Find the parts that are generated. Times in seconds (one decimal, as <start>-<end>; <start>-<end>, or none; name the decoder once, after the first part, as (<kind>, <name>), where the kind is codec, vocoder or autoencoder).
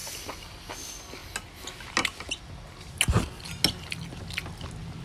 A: 0.0-0.7 (vocoder, BigVGAN v2)